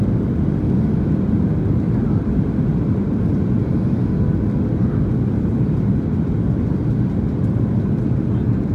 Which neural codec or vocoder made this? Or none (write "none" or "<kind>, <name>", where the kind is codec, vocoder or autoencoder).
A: none